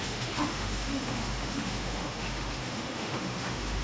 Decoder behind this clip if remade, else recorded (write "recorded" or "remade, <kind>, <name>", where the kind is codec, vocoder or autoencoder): remade, autoencoder, DAC-VAE